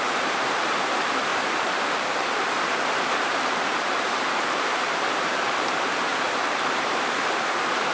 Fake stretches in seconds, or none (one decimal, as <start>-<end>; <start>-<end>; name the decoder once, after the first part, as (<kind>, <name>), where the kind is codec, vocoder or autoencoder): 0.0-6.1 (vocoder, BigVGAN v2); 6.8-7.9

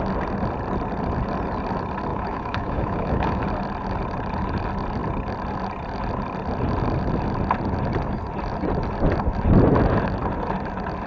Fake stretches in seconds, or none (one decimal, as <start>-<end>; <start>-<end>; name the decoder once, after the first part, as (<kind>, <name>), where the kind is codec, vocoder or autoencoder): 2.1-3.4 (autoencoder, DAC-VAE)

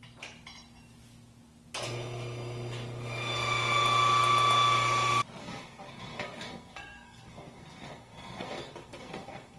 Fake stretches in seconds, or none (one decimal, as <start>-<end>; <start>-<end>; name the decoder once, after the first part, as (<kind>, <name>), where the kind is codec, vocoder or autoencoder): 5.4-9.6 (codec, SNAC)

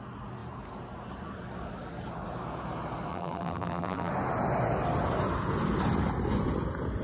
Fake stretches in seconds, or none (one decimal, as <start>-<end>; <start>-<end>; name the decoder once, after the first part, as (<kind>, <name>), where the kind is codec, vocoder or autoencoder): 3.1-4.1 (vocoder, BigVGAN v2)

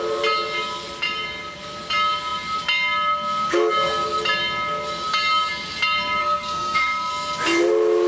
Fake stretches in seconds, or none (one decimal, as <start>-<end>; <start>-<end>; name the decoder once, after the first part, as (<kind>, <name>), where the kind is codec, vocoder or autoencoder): 6.2-7.1 (codec, SNAC)